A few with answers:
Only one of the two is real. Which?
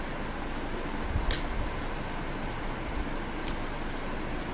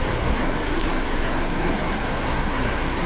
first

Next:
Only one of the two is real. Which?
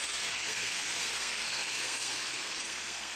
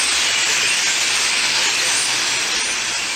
second